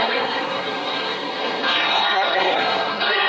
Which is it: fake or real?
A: fake